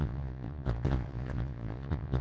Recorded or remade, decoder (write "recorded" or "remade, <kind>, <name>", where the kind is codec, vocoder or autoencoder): remade, vocoder, Vocos